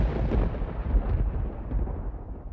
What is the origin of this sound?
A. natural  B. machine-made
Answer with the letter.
A